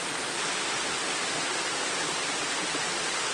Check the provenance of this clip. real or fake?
real